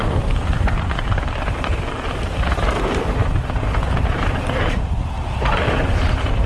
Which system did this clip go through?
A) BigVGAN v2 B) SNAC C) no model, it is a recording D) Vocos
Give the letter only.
A